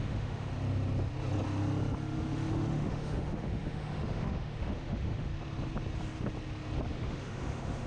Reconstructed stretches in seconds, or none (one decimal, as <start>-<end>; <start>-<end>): 0.0-0.5; 2.5-5.3; 6.9-7.9